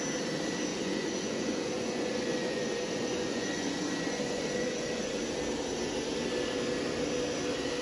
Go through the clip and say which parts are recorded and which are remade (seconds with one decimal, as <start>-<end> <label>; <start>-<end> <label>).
0.0-0.7 recorded; 0.7-5.1 remade; 5.1-7.8 recorded